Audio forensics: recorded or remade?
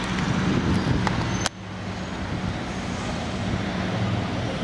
recorded